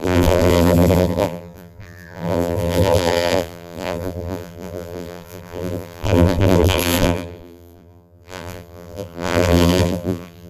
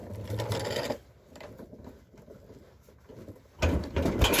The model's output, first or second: first